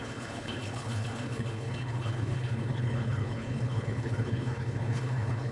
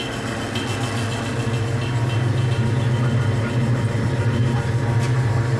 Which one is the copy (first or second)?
first